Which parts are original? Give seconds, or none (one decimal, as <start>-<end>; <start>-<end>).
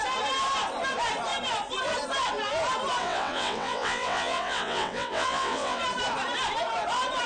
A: 0.0-3.0; 5.8-7.3